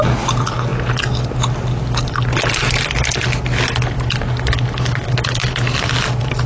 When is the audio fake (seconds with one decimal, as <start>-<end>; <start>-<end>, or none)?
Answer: none